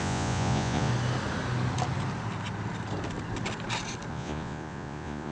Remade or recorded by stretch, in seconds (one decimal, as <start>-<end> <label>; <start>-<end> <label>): 0.0-0.9 remade; 0.9-4.1 recorded; 4.1-5.3 remade